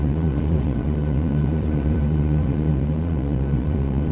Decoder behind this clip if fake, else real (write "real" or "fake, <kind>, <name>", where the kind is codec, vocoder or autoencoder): fake, vocoder, Vocos